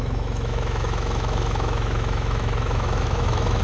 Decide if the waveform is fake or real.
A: fake